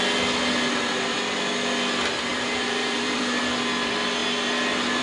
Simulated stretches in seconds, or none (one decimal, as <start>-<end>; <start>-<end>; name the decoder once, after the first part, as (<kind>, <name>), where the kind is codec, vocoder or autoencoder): 2.3-3.4 (vocoder, BigVGAN v2)